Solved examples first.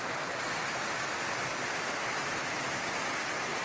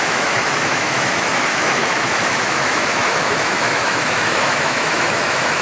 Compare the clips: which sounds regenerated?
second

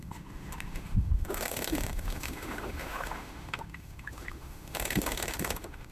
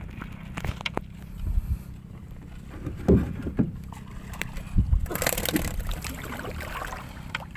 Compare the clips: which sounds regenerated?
first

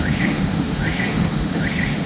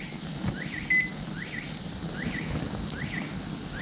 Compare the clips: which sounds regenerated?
first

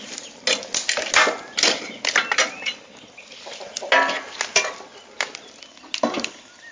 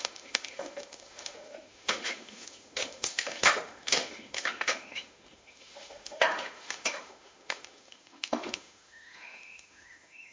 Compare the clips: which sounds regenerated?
second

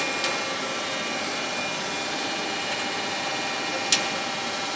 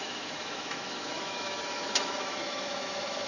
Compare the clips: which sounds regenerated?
second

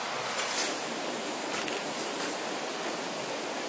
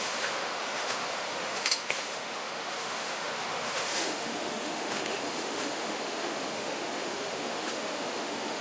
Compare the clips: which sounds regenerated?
second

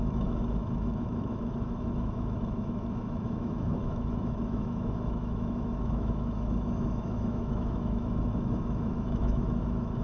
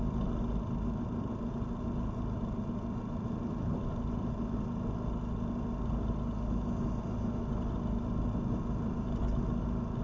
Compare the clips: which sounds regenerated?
first